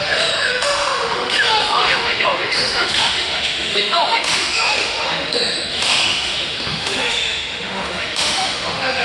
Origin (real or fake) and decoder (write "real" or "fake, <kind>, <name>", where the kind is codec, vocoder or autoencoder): fake, autoencoder, DAC-VAE